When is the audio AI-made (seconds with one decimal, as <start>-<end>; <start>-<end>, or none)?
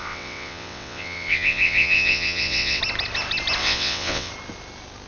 0.0-2.8; 3.6-4.3